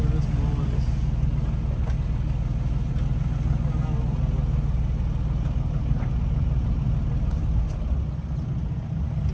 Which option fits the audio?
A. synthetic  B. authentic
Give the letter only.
B